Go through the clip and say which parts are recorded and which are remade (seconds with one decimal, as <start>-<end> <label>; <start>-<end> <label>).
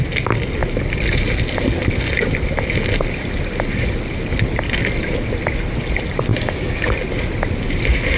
0.0-6.3 recorded; 6.3-6.9 remade; 6.9-8.2 recorded